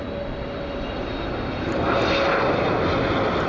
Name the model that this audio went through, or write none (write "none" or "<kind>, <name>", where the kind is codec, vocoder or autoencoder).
none